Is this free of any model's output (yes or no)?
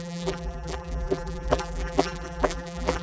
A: no